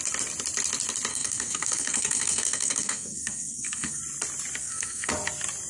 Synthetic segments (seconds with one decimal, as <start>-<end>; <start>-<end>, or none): 1.1-4.0; 4.6-5.1